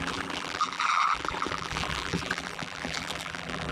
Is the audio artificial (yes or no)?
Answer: yes